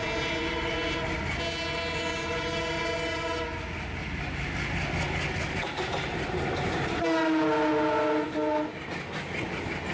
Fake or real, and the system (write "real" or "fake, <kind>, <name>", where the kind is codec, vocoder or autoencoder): real